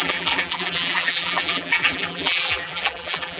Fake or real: fake